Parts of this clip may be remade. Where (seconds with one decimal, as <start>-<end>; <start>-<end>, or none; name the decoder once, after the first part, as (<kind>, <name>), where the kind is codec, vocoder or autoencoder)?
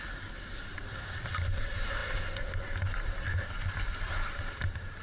none